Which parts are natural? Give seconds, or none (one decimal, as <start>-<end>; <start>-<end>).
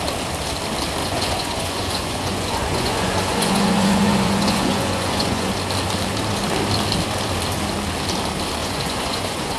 0.0-1.0; 5.5-8.6